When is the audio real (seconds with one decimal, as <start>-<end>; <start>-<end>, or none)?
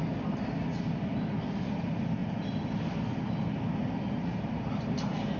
0.0-5.4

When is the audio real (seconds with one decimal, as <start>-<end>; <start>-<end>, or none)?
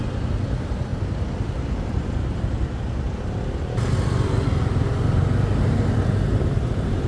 0.0-7.1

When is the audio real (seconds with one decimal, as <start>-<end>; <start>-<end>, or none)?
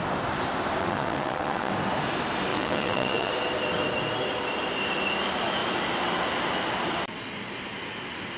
0.0-0.8; 1.7-2.5; 3.3-8.4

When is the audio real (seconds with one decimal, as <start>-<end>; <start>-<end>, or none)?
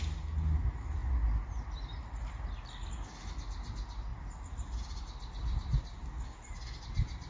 0.0-7.3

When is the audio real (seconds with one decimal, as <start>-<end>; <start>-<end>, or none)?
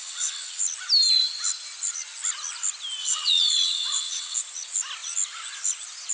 0.6-3.0; 4.4-6.1